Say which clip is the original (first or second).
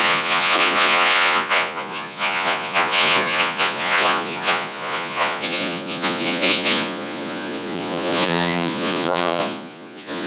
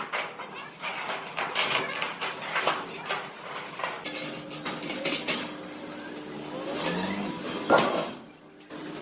second